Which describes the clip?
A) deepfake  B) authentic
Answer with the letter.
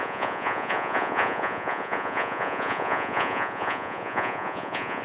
A